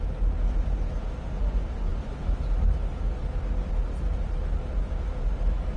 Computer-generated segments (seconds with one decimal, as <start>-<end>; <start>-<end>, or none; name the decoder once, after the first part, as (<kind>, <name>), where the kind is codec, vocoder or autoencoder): none